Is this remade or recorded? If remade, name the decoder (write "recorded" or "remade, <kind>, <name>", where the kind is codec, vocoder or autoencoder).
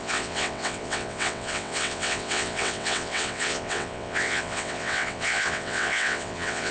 remade, vocoder, WaveNeXt